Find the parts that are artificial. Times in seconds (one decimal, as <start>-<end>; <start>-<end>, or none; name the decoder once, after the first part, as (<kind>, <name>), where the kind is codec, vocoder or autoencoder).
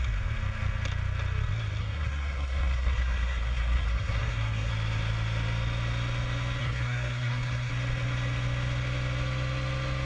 1.8-4.7 (codec, SNAC); 6.6-7.7